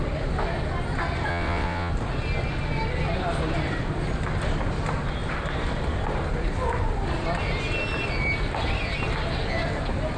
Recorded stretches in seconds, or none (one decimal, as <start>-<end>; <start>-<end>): 0.0-1.3; 1.9-10.2